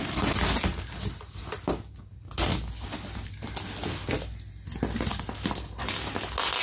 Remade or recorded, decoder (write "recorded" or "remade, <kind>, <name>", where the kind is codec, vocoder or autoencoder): recorded